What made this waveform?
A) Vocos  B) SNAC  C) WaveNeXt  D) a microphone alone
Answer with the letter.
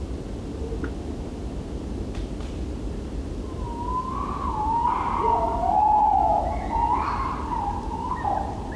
D